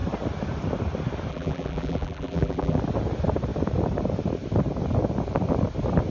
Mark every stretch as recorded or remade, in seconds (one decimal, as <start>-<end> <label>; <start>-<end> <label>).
0.0-1.3 recorded; 1.3-2.8 remade; 2.8-6.1 recorded